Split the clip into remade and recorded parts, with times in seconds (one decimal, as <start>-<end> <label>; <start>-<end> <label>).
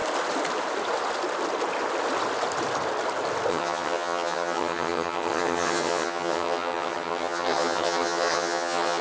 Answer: 0.0-3.5 recorded; 3.5-9.0 remade